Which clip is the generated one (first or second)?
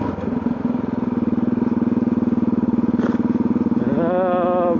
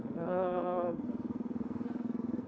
second